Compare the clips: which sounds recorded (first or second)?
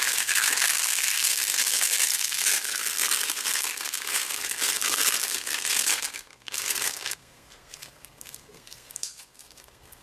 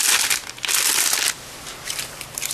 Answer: second